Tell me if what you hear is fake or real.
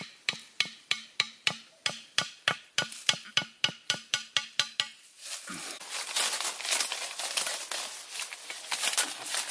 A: real